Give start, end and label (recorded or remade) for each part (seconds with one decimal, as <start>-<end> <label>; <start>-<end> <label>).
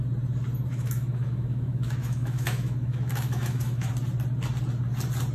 0.0-0.7 recorded; 0.7-3.9 remade; 3.9-5.3 recorded